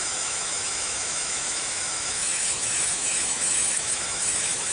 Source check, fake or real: fake